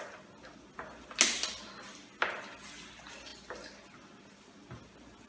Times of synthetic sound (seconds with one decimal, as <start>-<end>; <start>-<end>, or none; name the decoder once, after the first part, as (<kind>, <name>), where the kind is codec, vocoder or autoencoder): none